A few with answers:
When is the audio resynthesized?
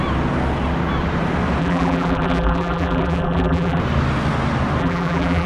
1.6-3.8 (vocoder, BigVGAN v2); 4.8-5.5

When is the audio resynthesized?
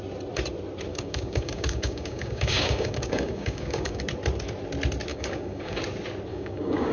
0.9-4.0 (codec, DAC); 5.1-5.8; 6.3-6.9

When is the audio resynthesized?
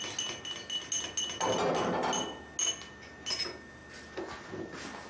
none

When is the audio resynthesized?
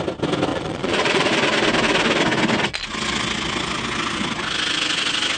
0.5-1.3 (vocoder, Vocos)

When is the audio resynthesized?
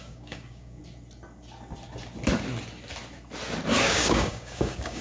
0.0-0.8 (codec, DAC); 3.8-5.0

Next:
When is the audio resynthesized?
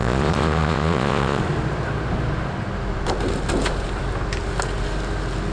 0.0-1.4 (vocoder, Vocos)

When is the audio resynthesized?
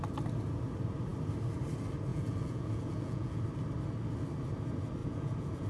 2.1-3.4 (vocoder, Vocos); 5.0-5.7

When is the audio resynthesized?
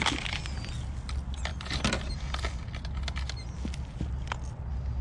none